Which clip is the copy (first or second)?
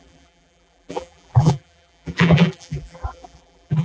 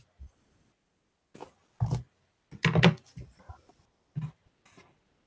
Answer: first